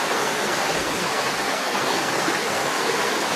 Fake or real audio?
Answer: fake